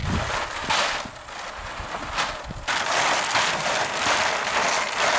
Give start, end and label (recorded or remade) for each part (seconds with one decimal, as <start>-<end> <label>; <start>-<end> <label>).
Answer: 0.0-5.2 recorded